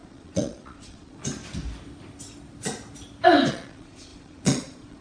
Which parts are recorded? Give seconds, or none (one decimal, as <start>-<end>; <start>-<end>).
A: 1.2-3.5